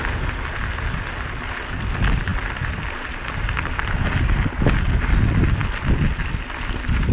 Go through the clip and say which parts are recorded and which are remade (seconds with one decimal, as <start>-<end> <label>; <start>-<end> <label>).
0.0-2.3 recorded; 2.3-3.1 remade; 3.1-7.1 recorded